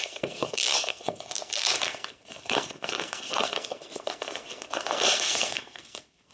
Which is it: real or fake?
fake